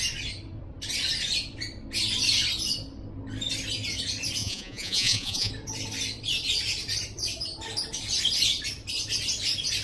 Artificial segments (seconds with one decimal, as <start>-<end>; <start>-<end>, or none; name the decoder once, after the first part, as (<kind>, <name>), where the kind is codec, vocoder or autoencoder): 4.4-5.5 (vocoder, Vocos)